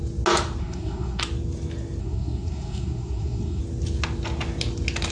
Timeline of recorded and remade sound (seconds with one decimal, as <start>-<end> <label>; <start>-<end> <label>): 0.0-0.6 recorded; 0.6-1.2 remade; 1.2-2.0 recorded; 2.0-3.6 remade; 3.6-5.1 recorded